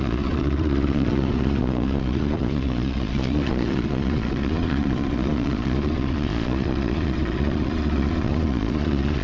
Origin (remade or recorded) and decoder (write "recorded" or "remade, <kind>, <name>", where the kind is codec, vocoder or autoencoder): remade, vocoder, Vocos